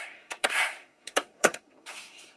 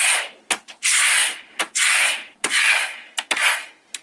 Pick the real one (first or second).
second